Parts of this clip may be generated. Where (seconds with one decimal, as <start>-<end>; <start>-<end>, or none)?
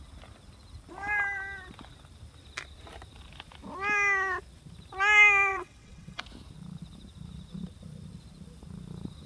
5.5-6.2